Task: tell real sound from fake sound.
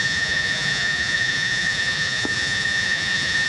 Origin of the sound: fake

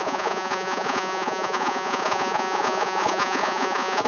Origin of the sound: fake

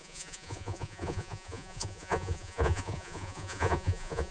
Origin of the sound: fake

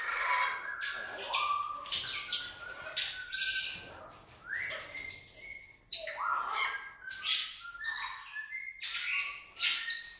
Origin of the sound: real